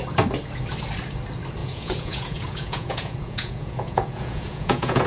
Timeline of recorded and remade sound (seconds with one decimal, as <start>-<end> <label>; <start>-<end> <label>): 0.0-1.6 recorded; 1.6-5.1 remade

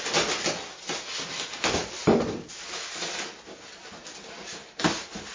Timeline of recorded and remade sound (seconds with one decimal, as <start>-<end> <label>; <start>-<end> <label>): 0.0-5.3 recorded

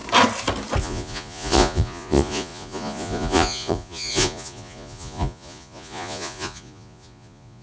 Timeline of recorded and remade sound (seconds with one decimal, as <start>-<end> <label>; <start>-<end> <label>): 0.0-0.8 recorded; 0.8-7.6 remade

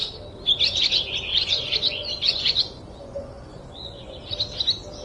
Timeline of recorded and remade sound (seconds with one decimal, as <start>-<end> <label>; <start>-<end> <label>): 0.0-1.3 recorded; 1.3-4.2 remade; 4.2-5.0 recorded

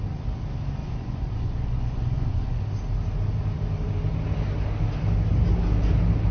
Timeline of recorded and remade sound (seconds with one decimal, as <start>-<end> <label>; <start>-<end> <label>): 0.0-0.8 recorded; 0.8-2.6 remade; 2.6-6.3 recorded

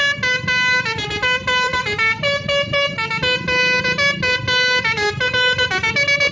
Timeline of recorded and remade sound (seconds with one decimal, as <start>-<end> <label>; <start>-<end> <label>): 0.0-6.3 recorded

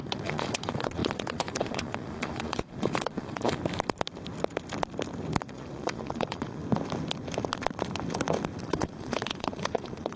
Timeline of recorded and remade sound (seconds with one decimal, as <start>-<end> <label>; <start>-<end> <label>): 0.0-3.6 remade; 3.6-5.4 recorded; 5.4-6.6 remade; 6.6-8.6 recorded; 8.6-10.2 remade